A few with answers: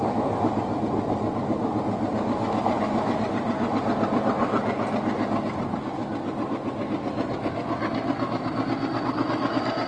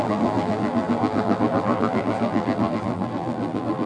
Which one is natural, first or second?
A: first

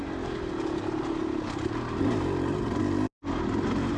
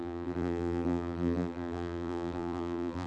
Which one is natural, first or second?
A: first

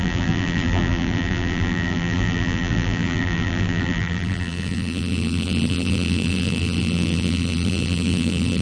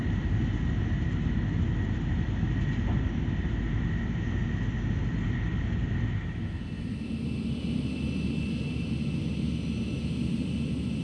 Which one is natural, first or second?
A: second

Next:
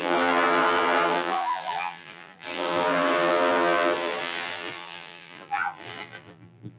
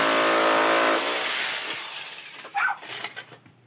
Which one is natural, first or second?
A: second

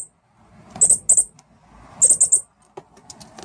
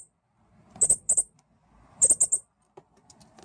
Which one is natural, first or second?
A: first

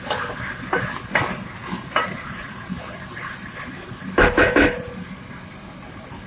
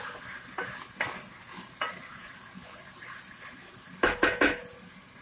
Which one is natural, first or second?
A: second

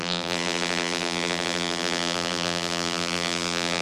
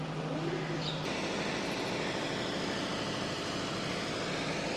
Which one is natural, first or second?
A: second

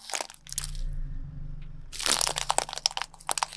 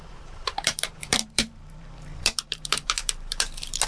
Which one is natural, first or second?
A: first